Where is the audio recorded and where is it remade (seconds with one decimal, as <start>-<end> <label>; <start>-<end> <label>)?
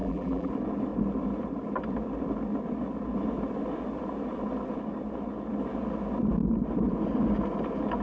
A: 0.0-0.5 remade; 0.5-8.0 recorded